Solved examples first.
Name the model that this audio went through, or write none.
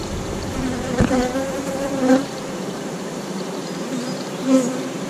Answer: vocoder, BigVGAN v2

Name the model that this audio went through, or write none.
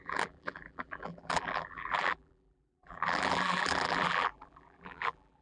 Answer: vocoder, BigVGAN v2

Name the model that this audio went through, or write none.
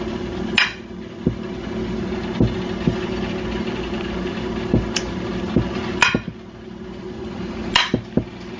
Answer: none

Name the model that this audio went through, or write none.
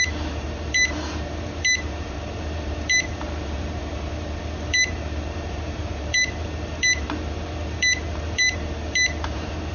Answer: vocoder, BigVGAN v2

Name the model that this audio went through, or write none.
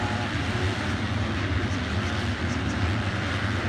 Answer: vocoder, BigVGAN v2